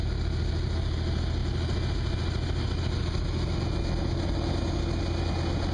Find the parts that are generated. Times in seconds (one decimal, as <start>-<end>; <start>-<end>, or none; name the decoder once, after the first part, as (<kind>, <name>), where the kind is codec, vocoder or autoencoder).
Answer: none